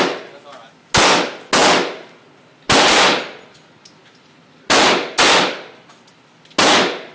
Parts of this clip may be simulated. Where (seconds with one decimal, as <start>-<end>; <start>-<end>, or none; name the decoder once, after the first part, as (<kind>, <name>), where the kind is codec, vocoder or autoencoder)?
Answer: none